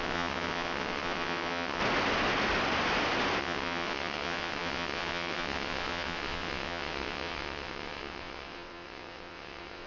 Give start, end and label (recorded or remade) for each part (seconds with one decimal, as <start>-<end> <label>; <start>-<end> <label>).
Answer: 0.0-1.8 remade; 1.8-3.4 recorded; 3.4-9.9 remade